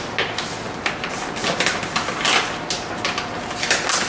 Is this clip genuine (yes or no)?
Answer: yes